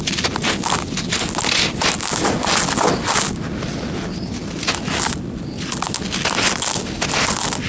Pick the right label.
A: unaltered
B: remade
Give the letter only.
A